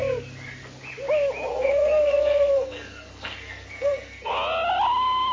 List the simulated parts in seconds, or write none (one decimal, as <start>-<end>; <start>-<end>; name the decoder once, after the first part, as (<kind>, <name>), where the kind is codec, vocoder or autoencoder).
1.5-4.3 (codec, SNAC)